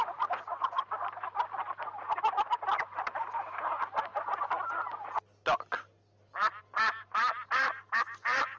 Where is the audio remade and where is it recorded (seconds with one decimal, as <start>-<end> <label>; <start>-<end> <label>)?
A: 0.0-4.1 remade; 4.1-6.6 recorded; 6.6-8.6 remade